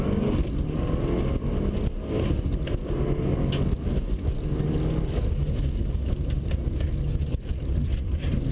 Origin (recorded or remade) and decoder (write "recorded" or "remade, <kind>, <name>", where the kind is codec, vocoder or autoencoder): recorded